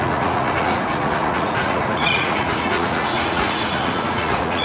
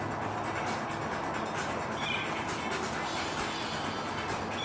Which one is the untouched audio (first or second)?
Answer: second